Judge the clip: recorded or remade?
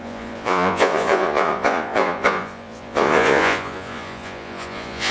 remade